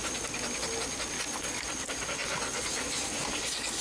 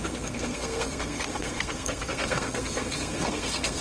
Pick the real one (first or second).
first